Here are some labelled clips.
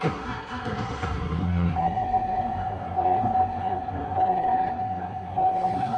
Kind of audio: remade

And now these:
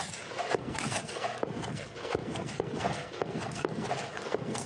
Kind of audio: remade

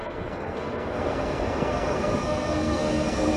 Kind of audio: remade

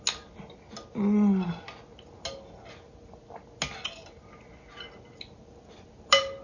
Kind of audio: recorded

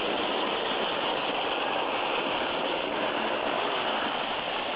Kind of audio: recorded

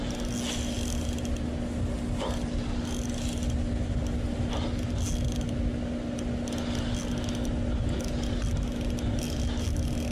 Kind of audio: recorded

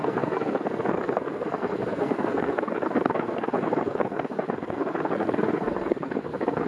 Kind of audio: remade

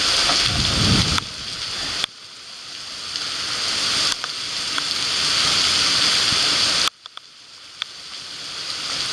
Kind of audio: recorded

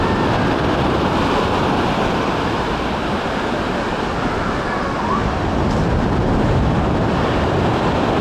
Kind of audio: recorded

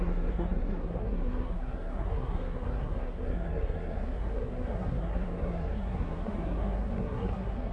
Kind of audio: remade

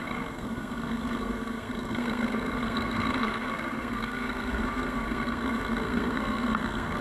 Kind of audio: remade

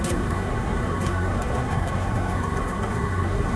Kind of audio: remade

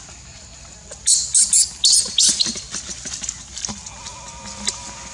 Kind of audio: recorded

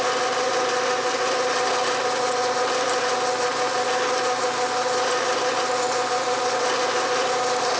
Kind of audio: recorded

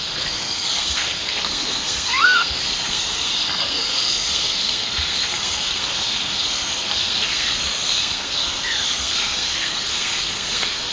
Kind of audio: remade